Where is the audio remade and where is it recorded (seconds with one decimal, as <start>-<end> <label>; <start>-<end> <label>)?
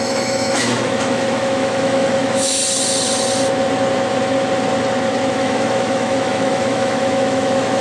0.0-2.6 remade; 2.6-5.3 recorded; 5.3-7.8 remade